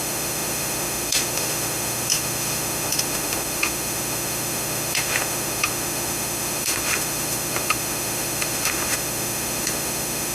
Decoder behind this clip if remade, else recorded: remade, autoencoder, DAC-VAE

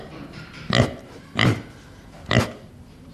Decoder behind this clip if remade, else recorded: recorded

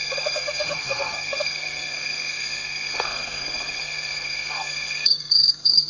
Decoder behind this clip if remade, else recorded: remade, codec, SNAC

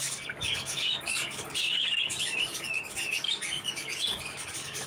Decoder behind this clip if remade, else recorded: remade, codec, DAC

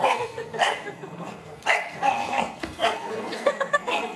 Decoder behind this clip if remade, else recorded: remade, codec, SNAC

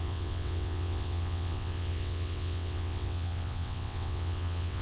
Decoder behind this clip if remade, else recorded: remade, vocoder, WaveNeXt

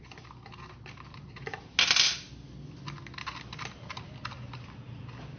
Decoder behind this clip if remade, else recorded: recorded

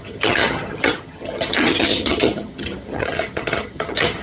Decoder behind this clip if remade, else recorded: remade, vocoder, HiFi-GAN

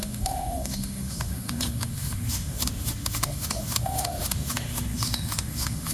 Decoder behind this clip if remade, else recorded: remade, autoencoder, DAC-VAE